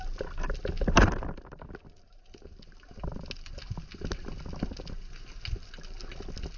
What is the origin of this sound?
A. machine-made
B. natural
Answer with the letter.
B